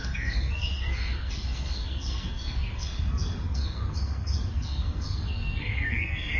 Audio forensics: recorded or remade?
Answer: remade